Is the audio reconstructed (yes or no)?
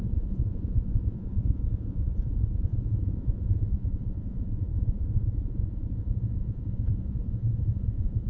yes